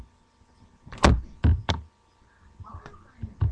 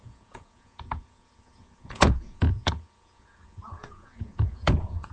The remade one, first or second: second